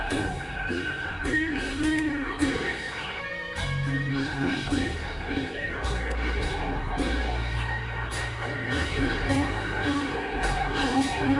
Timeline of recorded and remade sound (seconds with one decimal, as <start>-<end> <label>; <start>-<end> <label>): 0.0-3.2 remade; 3.2-4.1 recorded; 4.1-11.4 remade